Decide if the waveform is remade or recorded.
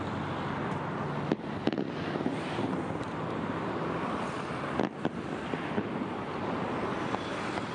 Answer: recorded